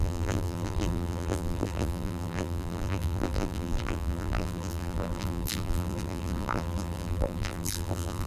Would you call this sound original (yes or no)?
no